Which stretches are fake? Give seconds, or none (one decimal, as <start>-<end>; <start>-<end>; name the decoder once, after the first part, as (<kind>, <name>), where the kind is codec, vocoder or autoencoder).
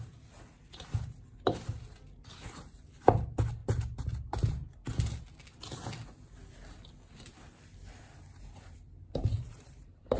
9.3-10.2 (vocoder, BigVGAN v2)